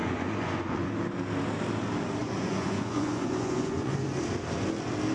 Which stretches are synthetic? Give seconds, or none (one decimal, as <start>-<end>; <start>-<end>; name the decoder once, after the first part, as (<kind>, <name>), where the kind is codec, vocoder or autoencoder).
0.0-0.9 (vocoder, Vocos); 2.2-4.2